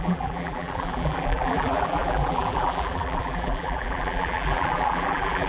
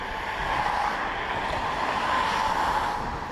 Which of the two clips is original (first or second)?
second